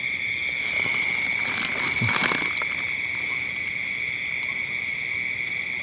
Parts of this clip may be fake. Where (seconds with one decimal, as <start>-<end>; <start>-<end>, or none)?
none